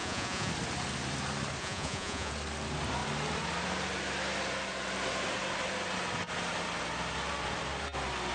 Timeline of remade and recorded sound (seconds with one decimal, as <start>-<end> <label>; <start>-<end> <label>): 0.0-0.5 remade; 0.5-1.6 recorded; 1.6-2.3 remade; 2.3-8.3 recorded